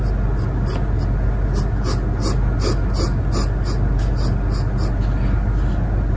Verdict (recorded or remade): recorded